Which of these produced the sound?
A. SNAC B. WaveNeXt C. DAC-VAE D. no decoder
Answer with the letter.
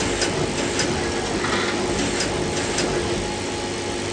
D